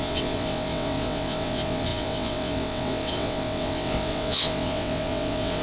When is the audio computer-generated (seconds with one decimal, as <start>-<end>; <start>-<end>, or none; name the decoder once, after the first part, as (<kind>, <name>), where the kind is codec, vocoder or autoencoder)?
0.0-5.6 (vocoder, WaveNeXt)